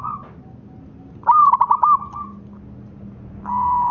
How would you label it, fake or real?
real